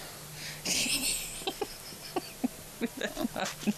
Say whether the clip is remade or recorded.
recorded